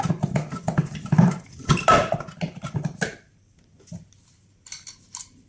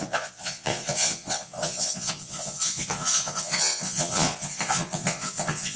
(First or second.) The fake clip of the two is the second